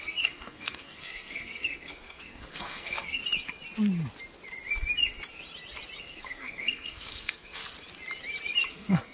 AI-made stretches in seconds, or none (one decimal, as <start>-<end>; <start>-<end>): 0.0-3.2; 6.0-7.6; 8.7-9.1